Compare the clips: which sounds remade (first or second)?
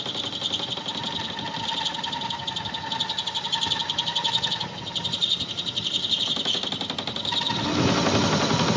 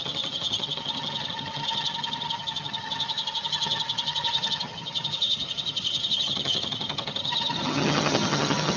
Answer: second